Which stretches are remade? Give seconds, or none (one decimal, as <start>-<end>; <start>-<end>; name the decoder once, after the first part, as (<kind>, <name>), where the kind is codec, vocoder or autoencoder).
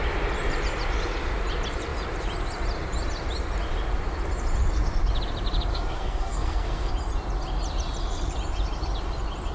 5.7-6.9 (codec, SNAC)